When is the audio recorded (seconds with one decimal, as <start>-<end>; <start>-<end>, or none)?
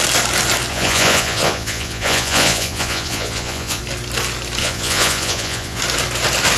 0.0-0.7; 3.8-4.6; 5.8-6.6